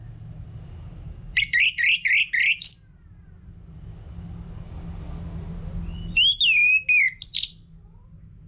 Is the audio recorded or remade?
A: recorded